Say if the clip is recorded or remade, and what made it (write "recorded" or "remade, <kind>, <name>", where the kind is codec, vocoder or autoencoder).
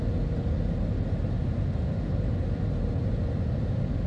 recorded